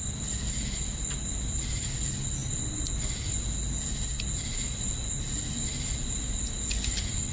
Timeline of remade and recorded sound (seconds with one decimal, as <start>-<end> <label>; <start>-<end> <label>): 0.0-7.3 recorded